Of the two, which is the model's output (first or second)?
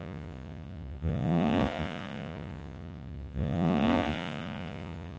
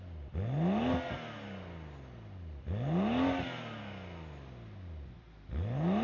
first